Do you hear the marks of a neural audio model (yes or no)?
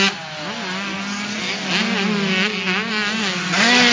no